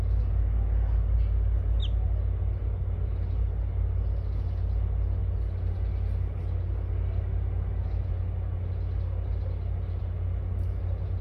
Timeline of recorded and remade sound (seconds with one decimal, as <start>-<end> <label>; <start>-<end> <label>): 0.0-11.2 recorded